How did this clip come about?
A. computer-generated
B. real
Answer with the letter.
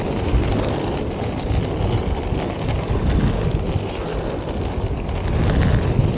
B